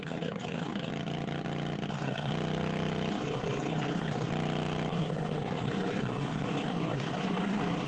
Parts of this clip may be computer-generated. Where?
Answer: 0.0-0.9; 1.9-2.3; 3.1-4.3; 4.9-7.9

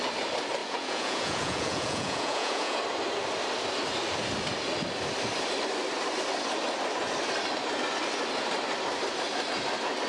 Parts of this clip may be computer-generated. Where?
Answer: 0.6-2.8

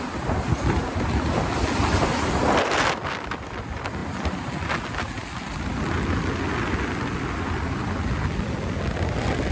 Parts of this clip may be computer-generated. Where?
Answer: none

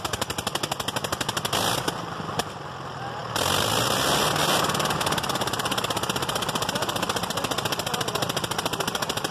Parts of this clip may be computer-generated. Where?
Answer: none

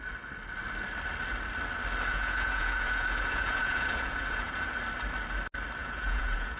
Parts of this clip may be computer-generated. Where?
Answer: 2.1-4.8; 5.8-6.6

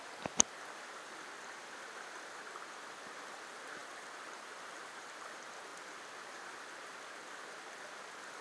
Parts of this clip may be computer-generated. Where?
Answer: 3.8-5.0

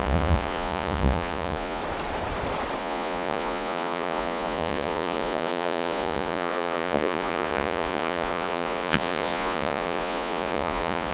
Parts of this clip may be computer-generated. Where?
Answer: 0.0-1.8; 2.8-11.1